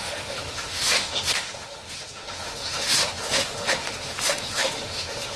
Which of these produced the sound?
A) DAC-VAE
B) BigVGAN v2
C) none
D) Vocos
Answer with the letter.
A